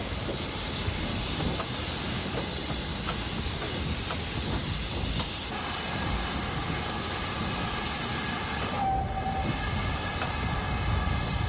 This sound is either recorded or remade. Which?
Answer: recorded